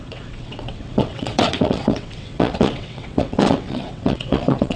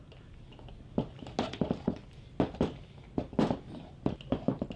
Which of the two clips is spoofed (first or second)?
first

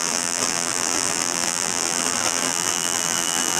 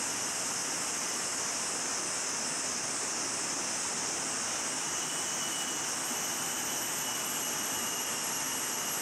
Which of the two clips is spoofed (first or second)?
first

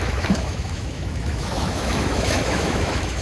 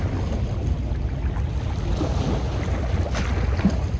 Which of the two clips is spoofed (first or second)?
first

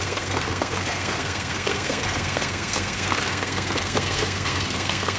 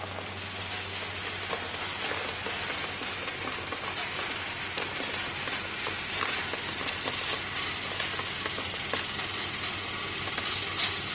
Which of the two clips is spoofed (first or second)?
first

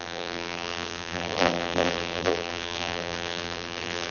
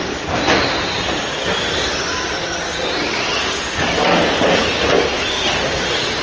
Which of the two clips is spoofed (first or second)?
first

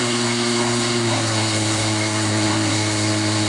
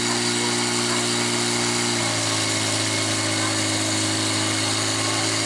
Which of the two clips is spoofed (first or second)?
first